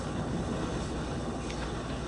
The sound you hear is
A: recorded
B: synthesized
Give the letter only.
B